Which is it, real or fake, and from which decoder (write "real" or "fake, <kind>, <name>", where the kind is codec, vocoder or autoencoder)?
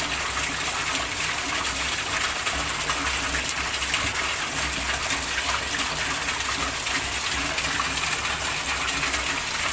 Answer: real